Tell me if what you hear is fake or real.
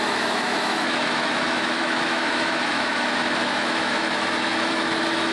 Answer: fake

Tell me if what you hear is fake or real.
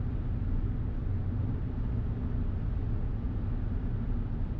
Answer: real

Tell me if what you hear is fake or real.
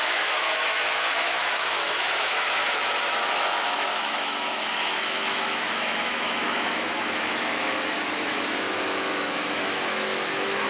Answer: fake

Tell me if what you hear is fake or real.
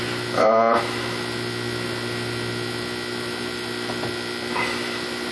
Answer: real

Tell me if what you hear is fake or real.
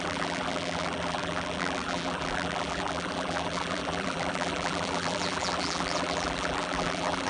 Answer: fake